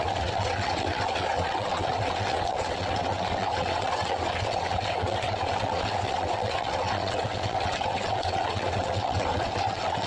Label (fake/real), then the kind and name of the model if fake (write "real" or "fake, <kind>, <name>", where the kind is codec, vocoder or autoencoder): fake, vocoder, WaveNeXt